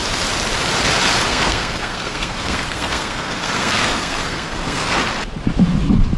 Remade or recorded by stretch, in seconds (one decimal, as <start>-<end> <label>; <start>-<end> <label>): 0.0-1.3 recorded; 1.3-5.0 remade; 5.0-6.2 recorded